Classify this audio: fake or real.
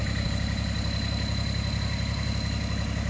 real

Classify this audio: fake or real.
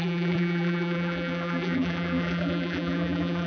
fake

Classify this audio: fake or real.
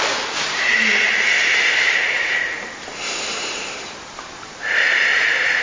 fake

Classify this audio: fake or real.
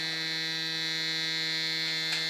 real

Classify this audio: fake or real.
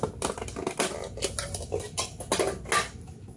real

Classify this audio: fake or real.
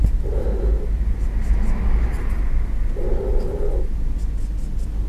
real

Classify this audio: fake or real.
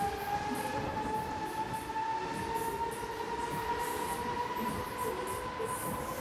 real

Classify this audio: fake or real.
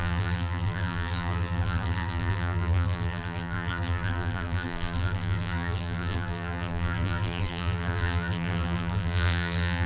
fake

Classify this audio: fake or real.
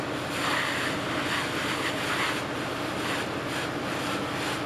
real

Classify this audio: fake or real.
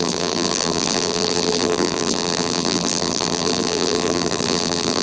fake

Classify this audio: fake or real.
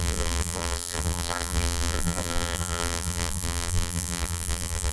fake